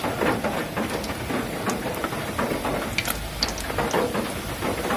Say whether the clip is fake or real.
real